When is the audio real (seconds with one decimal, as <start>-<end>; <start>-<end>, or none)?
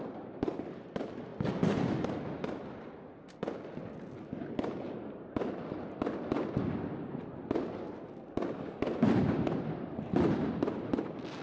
0.0-11.4